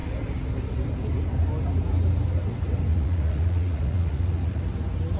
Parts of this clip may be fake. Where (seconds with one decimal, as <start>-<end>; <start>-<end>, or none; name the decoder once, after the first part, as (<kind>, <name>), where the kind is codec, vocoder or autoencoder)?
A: 2.9-4.6 (vocoder, Vocos)